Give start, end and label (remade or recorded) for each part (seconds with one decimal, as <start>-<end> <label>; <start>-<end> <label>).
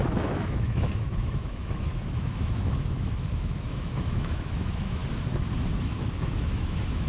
0.0-5.0 remade; 5.0-5.8 recorded; 5.8-7.1 remade